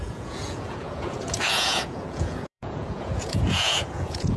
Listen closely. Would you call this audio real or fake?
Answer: fake